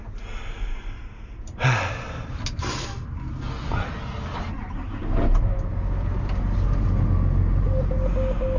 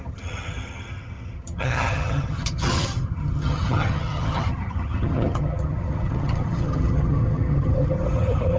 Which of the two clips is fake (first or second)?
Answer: second